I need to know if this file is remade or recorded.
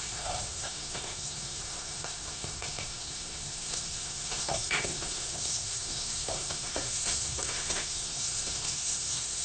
remade